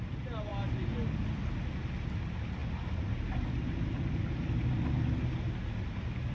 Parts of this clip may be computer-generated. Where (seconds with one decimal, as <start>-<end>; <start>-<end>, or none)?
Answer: none